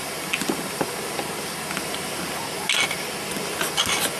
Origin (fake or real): real